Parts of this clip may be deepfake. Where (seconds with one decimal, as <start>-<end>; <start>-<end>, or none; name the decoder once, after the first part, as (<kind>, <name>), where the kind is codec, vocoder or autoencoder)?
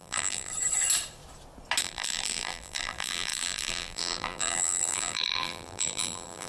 0.0-0.5 (vocoder, BigVGAN v2); 1.8-6.5